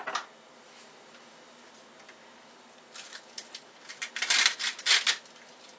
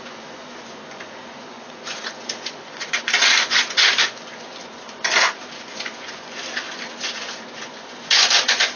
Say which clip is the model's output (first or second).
second